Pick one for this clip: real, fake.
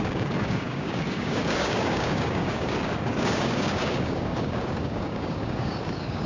fake